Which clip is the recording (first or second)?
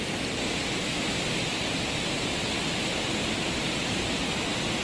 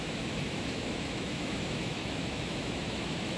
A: first